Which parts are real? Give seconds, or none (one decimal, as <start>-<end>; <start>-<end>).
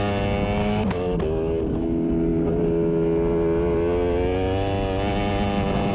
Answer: 0.0-0.6; 1.2-5.9